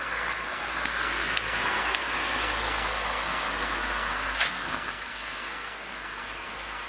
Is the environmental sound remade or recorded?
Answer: remade